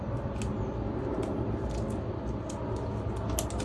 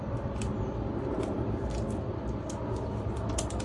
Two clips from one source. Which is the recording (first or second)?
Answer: first